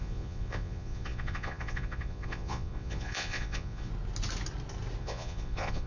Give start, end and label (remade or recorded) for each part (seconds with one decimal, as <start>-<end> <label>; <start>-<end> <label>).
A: 0.0-3.9 remade; 3.9-5.0 recorded; 5.0-5.9 remade